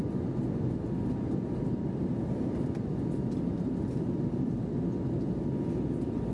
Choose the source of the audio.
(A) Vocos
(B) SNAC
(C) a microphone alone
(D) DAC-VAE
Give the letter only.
C